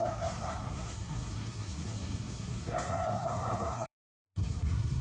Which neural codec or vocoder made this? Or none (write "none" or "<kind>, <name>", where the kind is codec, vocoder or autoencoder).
codec, SNAC